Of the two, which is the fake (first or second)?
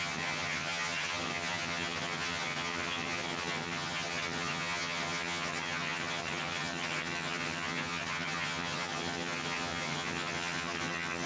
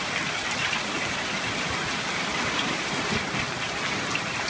first